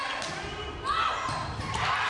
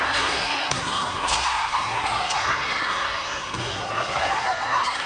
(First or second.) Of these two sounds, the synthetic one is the second